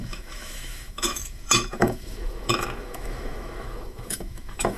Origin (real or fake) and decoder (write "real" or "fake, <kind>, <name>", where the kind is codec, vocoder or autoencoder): fake, autoencoder, DAC-VAE